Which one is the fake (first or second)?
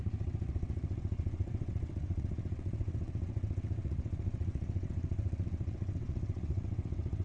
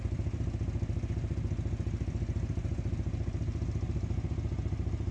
first